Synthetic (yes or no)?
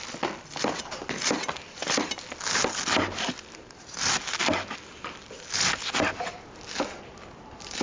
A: no